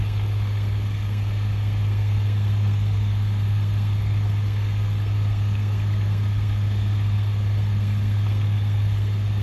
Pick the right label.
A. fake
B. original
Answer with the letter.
A